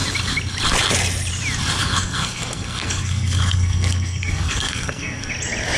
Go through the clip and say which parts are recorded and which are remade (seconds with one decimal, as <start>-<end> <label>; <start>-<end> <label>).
0.0-1.8 recorded; 1.8-5.3 remade; 5.3-5.8 recorded